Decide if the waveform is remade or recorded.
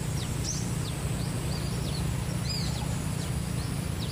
recorded